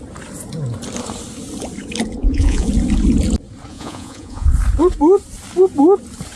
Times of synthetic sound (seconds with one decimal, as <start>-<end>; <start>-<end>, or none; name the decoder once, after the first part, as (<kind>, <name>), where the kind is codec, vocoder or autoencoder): 2.2-2.7 (vocoder, Vocos); 3.7-4.5